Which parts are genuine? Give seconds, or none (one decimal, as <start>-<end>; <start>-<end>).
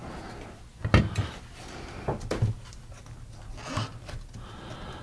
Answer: 0.0-5.0